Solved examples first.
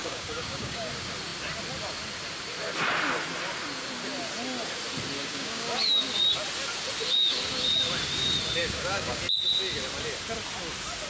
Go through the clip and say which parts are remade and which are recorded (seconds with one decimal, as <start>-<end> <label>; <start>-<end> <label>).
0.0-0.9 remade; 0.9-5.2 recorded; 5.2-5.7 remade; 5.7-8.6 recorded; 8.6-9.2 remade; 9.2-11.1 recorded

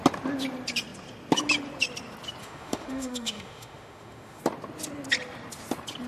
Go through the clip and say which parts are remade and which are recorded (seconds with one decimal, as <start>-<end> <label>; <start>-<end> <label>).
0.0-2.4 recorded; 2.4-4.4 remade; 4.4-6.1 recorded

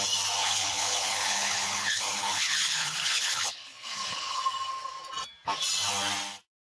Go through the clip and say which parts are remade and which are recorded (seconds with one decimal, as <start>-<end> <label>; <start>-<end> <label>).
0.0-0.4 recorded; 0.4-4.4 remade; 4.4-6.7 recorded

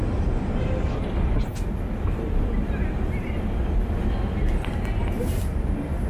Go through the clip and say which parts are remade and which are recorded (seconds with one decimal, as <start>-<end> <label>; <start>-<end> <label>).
0.0-6.1 recorded

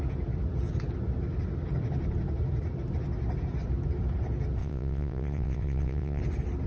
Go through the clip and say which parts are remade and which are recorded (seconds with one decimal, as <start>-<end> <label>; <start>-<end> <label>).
0.0-4.6 recorded; 4.6-6.2 remade; 6.2-6.7 recorded